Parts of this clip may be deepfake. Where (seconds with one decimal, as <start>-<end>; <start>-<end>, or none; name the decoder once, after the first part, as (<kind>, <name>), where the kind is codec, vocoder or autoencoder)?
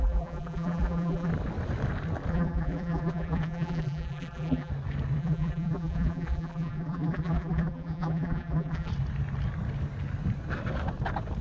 0.0-1.3 (vocoder, BigVGAN v2); 2.3-4.7; 5.2-8.9